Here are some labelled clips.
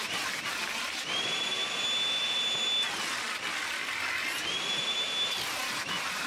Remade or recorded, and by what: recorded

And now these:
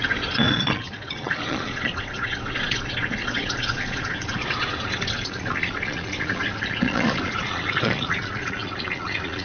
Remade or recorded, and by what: remade, vocoder, Vocos